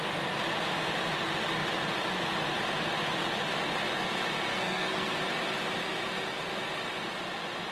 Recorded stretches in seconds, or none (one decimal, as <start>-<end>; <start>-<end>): 0.0-4.5; 5.2-7.7